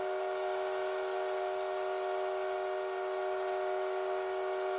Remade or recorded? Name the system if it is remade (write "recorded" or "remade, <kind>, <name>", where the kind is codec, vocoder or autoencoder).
recorded